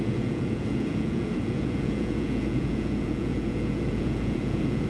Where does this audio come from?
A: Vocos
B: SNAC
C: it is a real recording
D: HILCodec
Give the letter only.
A